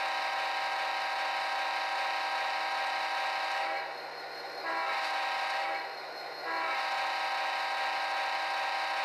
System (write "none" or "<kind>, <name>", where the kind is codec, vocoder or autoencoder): none